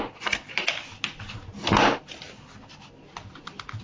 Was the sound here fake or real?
real